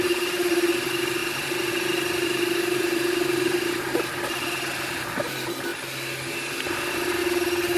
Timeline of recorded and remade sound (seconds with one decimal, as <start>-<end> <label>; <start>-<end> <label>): 0.0-5.7 remade; 5.7-6.3 recorded; 6.3-7.2 remade; 7.2-7.8 recorded